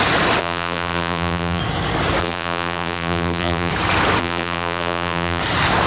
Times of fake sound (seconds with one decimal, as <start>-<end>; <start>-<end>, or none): 0.4-1.6; 2.2-3.7; 4.2-5.4